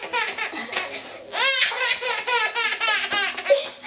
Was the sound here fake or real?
real